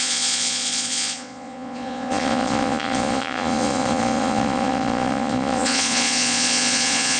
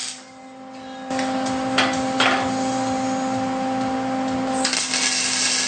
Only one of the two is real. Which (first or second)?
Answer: second